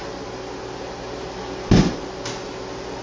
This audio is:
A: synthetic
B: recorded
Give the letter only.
B